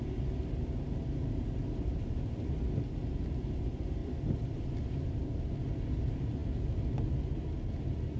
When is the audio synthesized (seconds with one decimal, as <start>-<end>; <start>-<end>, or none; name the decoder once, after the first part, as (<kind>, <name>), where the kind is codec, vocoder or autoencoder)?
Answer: 4.0-5.4 (vocoder, BigVGAN v2)